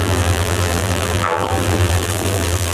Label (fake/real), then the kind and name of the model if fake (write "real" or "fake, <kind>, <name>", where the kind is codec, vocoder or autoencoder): fake, vocoder, BigVGAN v2